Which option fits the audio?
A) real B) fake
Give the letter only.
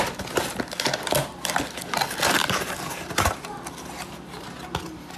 A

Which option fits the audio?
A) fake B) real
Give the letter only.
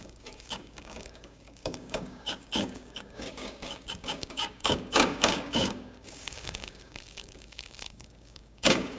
A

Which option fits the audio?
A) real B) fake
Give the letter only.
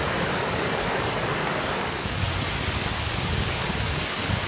B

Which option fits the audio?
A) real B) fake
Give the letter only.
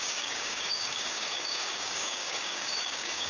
B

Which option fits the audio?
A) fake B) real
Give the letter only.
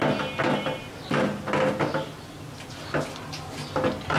B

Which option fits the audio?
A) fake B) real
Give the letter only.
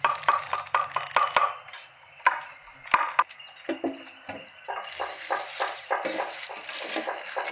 B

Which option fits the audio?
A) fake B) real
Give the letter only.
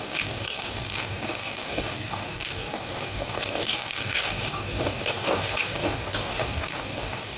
A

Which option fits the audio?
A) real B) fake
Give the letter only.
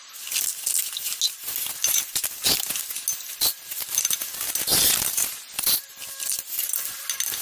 A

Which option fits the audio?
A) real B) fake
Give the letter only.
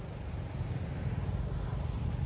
A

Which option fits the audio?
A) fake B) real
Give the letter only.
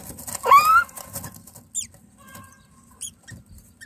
B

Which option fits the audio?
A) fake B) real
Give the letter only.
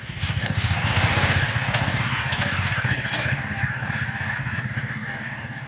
A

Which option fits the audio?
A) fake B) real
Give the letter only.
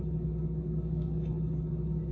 A